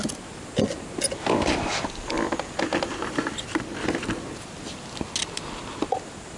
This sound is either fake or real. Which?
real